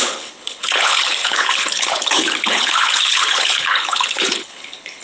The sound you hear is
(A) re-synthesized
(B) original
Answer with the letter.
A